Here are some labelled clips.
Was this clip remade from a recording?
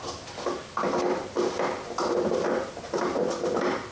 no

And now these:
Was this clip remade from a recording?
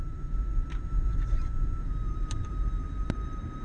yes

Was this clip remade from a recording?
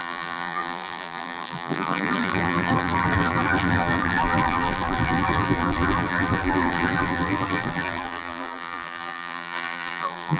yes